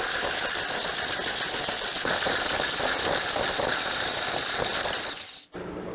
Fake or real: real